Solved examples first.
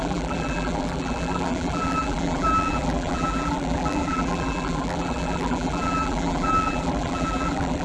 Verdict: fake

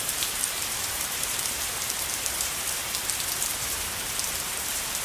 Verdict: fake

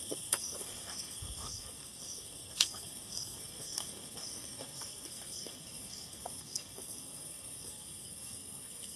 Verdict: fake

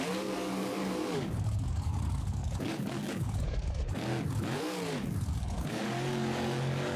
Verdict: fake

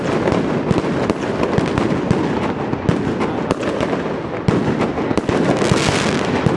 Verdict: real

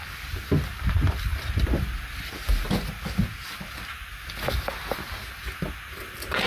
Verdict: real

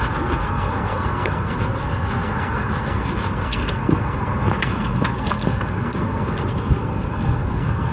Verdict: fake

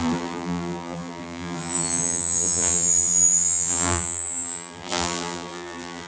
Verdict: fake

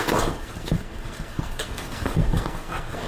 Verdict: fake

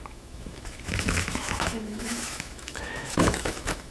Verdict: fake